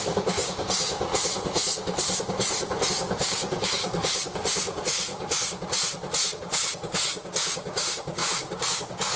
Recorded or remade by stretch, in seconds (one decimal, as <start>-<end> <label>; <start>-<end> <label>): 0.0-1.1 remade; 1.1-2.9 recorded; 2.9-5.1 remade; 5.1-6.3 recorded; 6.3-9.2 remade

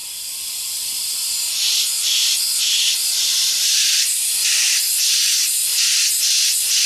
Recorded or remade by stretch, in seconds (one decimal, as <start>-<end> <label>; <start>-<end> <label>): 0.0-3.0 recorded; 3.0-4.8 remade; 4.8-6.9 recorded

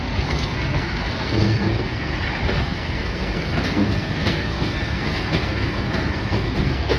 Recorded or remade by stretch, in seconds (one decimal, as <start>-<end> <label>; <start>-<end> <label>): 0.0-2.1 remade; 2.1-2.6 recorded; 2.6-7.0 remade

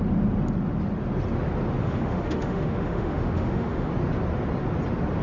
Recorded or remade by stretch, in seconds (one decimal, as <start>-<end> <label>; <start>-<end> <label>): 0.0-1.8 recorded; 1.8-3.9 remade; 3.9-5.2 recorded

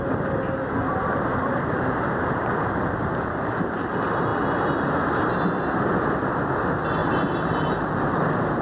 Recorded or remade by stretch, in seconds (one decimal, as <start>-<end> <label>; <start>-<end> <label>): 0.0-0.9 recorded; 0.9-3.9 remade; 3.9-7.0 recorded; 7.0-8.6 remade